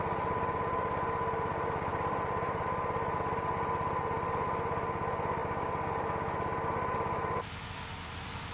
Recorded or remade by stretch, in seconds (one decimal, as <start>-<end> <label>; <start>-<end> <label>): 0.0-1.9 recorded; 1.9-2.6 remade; 2.6-8.5 recorded